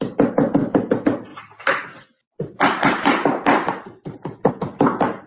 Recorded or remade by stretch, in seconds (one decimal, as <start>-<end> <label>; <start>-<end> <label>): 0.0-5.3 recorded